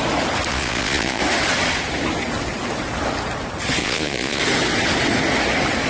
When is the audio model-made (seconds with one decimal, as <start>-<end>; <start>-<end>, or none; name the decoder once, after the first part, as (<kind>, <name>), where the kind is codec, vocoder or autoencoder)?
0.5-1.2 (vocoder, Vocos); 3.8-4.4